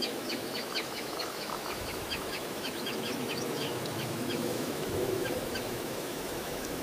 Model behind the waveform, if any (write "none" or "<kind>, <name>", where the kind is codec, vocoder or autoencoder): autoencoder, DAC-VAE